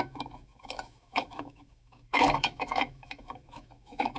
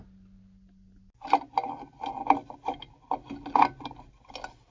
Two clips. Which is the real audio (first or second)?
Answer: second